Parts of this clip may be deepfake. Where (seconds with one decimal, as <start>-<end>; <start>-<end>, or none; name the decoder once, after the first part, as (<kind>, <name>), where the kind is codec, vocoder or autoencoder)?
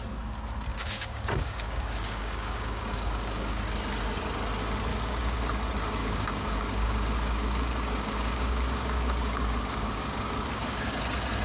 0.7-3.6 (codec, DAC); 4.9-5.4; 6.0-11.0